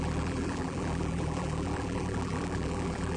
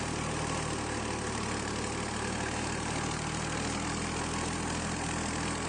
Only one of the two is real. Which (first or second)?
second